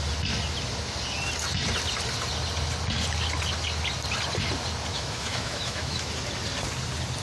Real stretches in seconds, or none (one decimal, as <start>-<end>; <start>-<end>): 0.0-4.9; 6.1-7.2